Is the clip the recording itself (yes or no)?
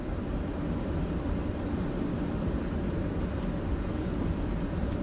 yes